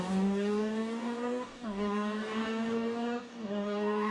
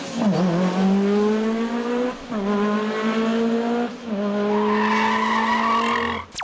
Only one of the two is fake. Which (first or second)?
first